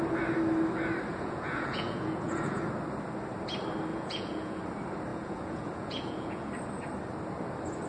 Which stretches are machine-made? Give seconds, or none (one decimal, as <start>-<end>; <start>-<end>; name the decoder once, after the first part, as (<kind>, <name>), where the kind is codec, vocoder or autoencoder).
1.1-2.7 (vocoder, Vocos); 3.9-4.6; 5.1-6.5